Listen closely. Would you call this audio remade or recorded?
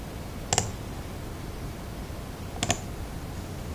recorded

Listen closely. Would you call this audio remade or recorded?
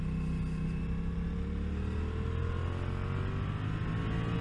recorded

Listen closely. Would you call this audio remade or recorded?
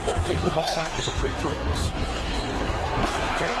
remade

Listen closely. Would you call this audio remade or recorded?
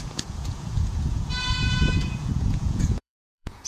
remade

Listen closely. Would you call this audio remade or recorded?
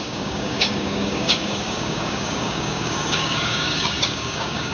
remade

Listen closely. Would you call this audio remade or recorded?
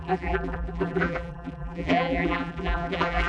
remade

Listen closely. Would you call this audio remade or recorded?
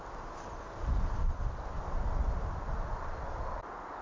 recorded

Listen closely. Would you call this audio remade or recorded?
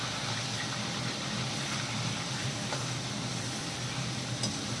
recorded